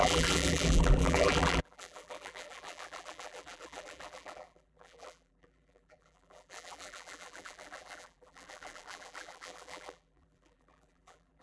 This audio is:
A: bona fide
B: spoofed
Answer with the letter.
B